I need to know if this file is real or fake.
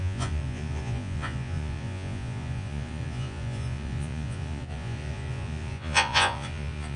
fake